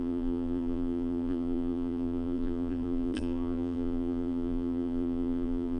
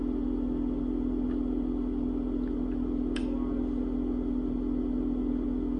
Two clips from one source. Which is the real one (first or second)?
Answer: second